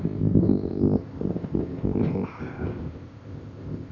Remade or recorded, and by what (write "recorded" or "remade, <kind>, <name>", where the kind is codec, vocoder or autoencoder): remade, codec, ZipCodec